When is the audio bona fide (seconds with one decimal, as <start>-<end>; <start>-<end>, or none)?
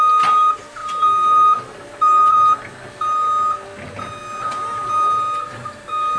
0.0-6.2